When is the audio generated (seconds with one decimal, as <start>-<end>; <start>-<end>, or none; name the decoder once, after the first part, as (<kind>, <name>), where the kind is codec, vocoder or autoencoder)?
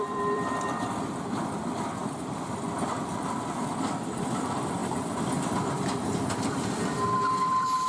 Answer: 0.0-7.9 (vocoder, BigVGAN v2)